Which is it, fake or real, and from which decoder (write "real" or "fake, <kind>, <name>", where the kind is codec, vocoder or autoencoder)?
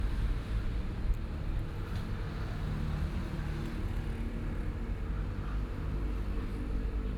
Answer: real